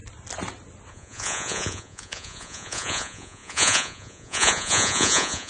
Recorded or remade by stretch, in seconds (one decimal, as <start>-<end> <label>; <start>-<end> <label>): 0.0-0.9 recorded; 0.9-5.5 remade